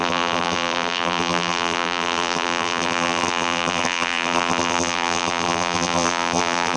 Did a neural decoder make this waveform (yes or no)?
yes